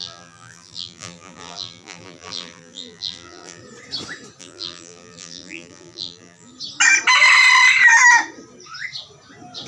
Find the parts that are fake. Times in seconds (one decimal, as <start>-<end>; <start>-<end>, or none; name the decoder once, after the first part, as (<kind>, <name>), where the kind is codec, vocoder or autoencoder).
0.0-3.6 (vocoder, BigVGAN v2); 4.4-6.5